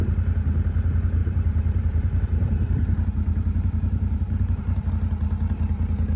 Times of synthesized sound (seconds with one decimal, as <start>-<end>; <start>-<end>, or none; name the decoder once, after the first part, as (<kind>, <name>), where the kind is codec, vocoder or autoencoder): 1.2-4.9 (vocoder, BigVGAN v2)